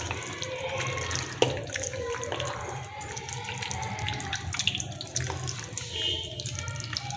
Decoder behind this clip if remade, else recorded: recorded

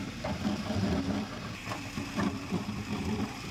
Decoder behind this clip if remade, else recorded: remade, vocoder, BigVGAN v2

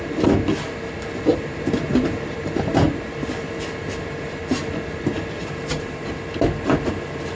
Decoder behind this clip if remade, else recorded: recorded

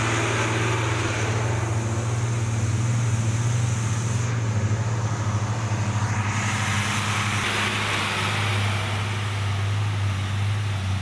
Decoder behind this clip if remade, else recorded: recorded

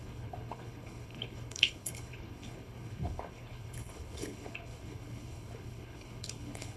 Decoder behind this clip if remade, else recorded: remade, codec, HILCodec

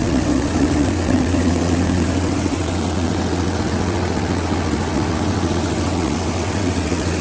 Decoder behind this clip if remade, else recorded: remade, vocoder, WaveNeXt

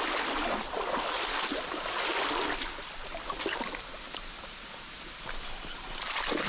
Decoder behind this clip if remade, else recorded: recorded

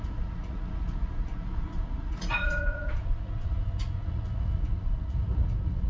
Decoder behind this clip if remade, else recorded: remade, vocoder, Vocos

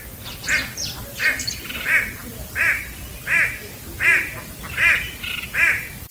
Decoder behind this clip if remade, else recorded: recorded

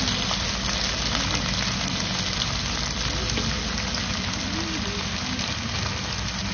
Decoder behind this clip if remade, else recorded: recorded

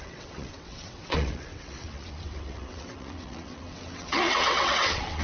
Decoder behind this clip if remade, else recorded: remade, vocoder, WaveNeXt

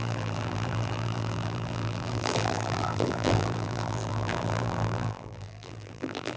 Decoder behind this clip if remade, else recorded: remade, vocoder, BigVGAN v2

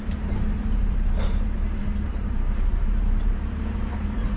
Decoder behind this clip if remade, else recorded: remade, vocoder, BigVGAN v2